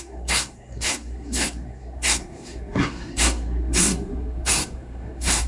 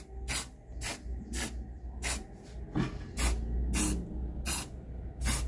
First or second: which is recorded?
second